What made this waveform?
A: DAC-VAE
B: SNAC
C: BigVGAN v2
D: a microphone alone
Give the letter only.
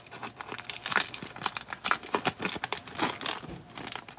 D